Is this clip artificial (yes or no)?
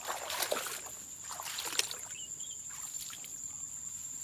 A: no